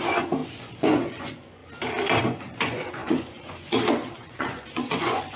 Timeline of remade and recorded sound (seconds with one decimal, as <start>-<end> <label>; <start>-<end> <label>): 0.0-1.6 remade; 1.6-2.2 recorded; 2.2-5.4 remade